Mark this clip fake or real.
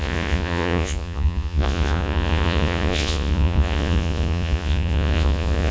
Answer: fake